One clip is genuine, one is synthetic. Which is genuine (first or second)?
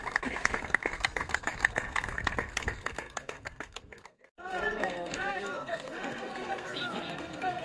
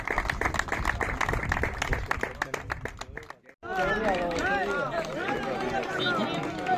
second